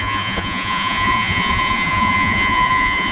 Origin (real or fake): fake